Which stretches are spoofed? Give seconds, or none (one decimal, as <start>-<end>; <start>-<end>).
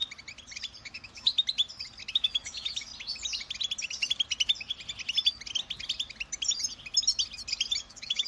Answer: 0.8-1.3; 2.1-2.9; 7.8-8.3